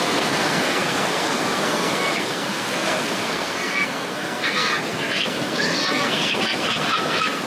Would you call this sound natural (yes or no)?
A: no